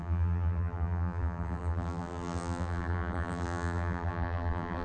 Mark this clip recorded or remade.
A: remade